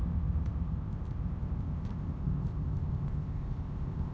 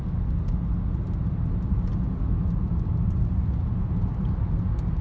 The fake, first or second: first